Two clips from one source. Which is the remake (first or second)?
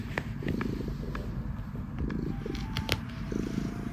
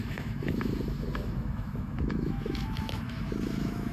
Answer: second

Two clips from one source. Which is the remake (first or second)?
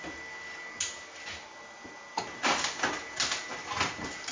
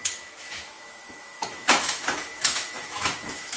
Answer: second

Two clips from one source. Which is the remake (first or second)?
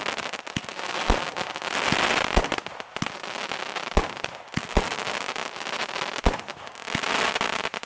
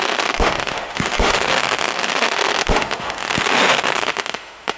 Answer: second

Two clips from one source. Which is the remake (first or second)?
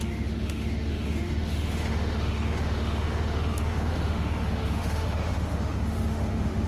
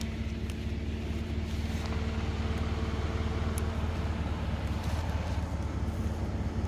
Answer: first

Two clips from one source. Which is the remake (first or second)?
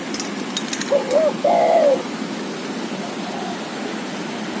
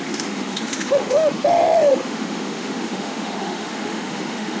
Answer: second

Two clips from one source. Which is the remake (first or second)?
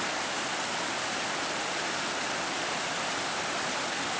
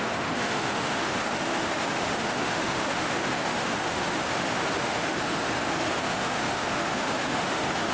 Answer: second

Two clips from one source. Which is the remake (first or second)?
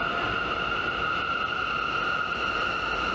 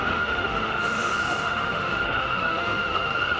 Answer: second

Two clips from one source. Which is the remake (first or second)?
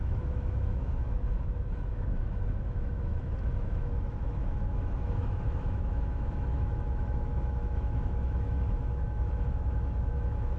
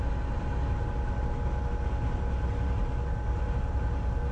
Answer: first